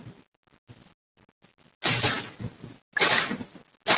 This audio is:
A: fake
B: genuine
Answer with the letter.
B